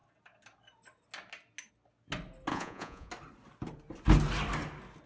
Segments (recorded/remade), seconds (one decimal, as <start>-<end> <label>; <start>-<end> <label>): 0.0-2.5 recorded; 2.5-3.1 remade; 3.1-5.1 recorded